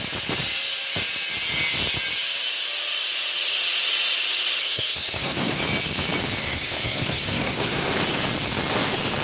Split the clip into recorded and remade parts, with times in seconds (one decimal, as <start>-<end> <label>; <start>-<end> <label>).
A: 0.0-4.6 recorded; 4.6-5.6 remade; 5.6-6.4 recorded; 6.4-7.9 remade; 7.9-9.2 recorded